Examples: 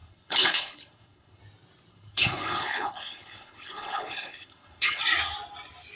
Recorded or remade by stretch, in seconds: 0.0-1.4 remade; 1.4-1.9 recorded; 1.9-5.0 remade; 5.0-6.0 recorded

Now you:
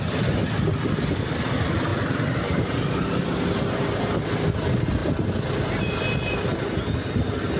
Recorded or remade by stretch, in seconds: 0.0-7.6 recorded

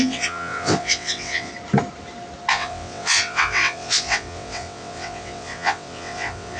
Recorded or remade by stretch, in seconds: 0.0-1.5 remade; 1.5-2.5 recorded; 2.5-6.6 remade

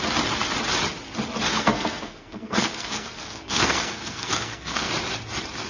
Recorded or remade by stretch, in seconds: 0.0-1.5 recorded; 1.5-4.9 remade; 4.9-5.7 recorded